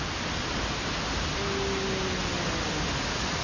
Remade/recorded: recorded